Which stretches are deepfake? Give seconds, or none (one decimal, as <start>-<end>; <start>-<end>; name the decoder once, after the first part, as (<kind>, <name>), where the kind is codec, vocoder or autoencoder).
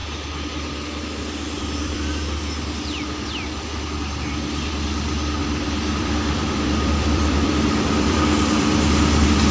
0.0-3.3 (vocoder, BigVGAN v2); 5.4-8.2